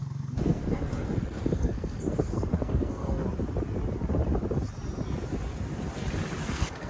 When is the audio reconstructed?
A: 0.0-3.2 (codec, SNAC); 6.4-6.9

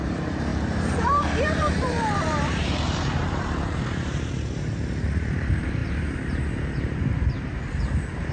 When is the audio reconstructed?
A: 0.0-8.3 (vocoder, BigVGAN v2)

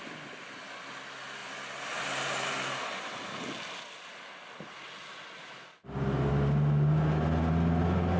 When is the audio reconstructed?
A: none

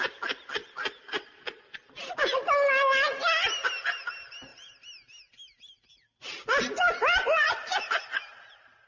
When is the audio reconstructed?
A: none

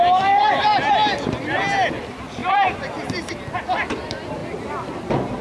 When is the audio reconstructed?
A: 0.0-0.7 (vocoder, BigVGAN v2); 1.9-4.4; 5.0-5.4

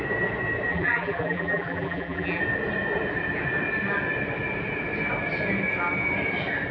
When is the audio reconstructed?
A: 0.7-2.4 (vocoder, BigVGAN v2)